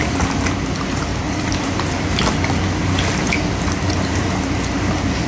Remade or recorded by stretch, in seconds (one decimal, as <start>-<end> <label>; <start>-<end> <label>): 0.0-5.3 recorded